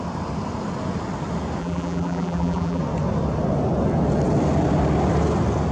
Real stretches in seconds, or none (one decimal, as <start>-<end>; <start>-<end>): 0.0-1.6; 2.8-5.7